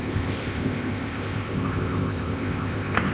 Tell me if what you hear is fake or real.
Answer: fake